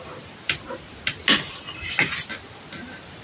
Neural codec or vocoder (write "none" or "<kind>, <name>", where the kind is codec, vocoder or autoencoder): none